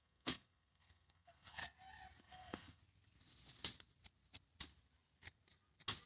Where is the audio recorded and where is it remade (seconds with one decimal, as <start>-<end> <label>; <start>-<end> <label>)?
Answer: 0.0-1.6 remade; 1.6-2.2 recorded; 2.2-2.8 remade; 2.8-6.1 recorded